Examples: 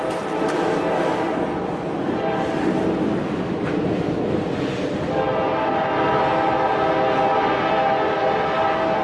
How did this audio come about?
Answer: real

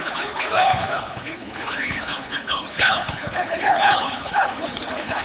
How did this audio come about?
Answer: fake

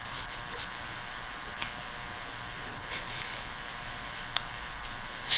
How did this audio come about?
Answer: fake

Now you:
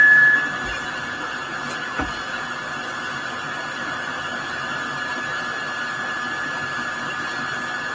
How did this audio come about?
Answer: real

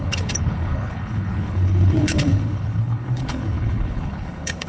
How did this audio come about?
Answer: fake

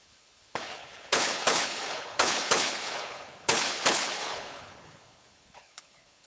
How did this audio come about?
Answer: fake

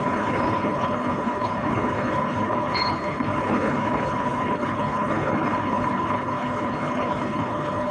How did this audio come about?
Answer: fake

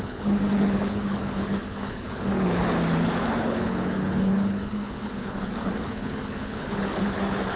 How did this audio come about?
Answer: fake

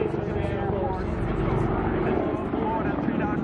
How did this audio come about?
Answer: real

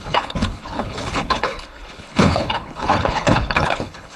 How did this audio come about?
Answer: fake